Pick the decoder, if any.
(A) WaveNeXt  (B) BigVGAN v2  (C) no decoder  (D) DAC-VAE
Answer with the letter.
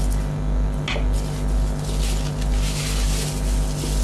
C